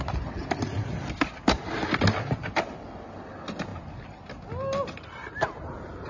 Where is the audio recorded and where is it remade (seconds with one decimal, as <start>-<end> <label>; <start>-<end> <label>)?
0.0-6.1 recorded